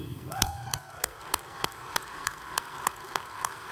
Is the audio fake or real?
fake